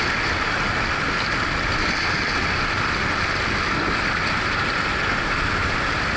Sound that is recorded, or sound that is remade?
recorded